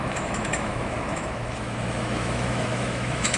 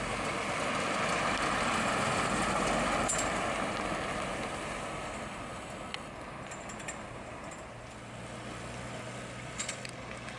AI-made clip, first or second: first